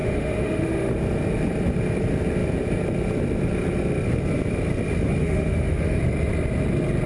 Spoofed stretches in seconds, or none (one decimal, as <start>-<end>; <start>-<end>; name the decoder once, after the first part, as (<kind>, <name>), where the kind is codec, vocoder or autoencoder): 0.0-0.9 (autoencoder, DAC-VAE); 5.2-6.0